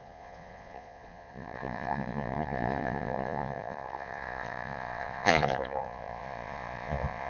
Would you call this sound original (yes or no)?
no